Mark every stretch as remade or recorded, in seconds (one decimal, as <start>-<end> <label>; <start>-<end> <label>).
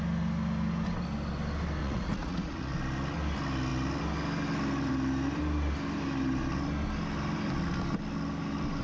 0.0-1.8 recorded; 1.8-2.7 remade; 2.7-8.8 recorded